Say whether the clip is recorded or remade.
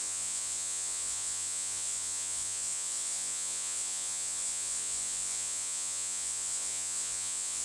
remade